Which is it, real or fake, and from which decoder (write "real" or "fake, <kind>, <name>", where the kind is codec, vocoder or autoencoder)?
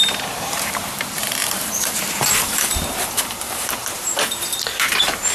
fake, vocoder, BigVGAN v2